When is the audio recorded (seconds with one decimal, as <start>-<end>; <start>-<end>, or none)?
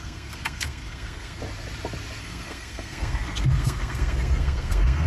1.4-2.2